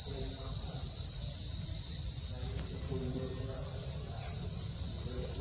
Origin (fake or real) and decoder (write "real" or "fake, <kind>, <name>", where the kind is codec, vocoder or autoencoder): real